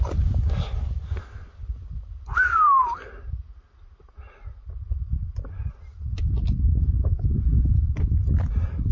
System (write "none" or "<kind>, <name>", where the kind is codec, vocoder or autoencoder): none